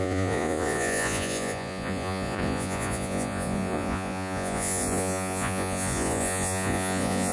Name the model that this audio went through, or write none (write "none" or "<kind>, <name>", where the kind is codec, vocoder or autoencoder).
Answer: vocoder, Vocos